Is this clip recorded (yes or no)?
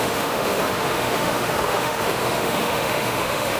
no